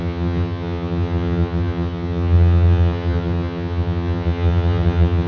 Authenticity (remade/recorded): remade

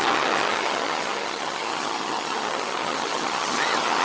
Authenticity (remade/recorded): remade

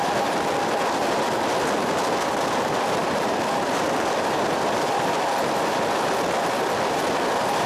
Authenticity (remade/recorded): recorded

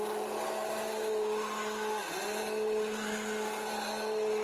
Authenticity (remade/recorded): recorded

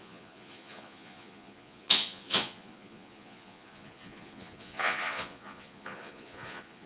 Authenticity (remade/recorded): remade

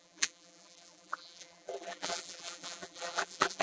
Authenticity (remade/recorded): remade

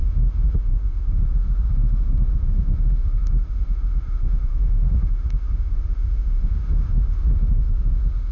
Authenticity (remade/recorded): remade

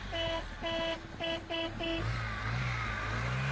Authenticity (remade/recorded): recorded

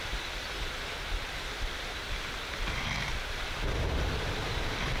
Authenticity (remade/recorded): remade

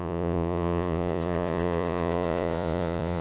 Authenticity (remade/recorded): remade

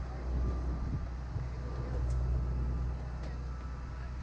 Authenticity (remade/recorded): recorded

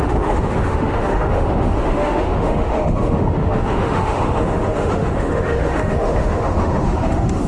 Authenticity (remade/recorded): remade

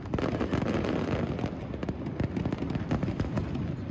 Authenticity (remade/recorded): recorded